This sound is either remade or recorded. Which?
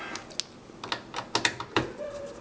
recorded